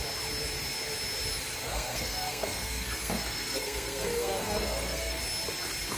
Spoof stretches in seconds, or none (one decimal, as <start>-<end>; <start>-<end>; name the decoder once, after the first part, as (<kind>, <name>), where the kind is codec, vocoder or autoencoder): 1.6-5.2 (codec, SNAC)